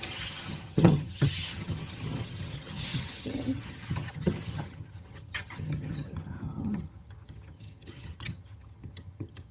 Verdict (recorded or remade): remade